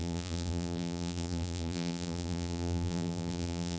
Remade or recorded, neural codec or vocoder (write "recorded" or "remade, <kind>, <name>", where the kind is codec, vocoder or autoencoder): remade, vocoder, BigVGAN v2